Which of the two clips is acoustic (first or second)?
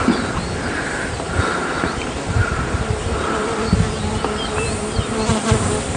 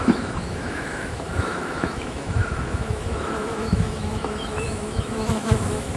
first